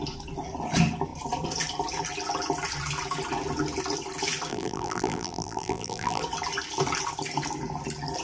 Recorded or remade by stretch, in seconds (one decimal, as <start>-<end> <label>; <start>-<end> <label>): 0.0-4.5 recorded; 4.5-6.2 remade; 6.2-8.2 recorded